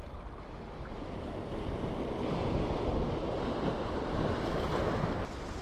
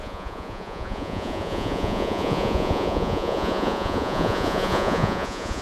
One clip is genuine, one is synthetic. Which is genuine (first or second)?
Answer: first